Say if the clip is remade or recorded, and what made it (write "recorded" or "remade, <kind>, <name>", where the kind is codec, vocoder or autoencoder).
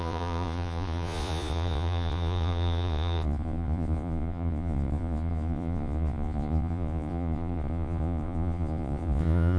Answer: remade, vocoder, Vocos